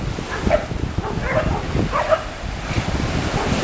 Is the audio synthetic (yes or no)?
no